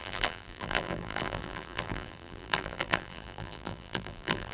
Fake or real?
fake